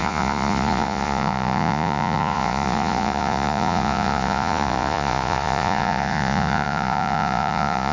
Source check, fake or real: fake